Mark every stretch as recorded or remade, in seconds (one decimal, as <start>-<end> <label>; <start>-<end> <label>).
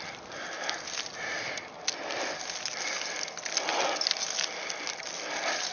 0.0-5.7 recorded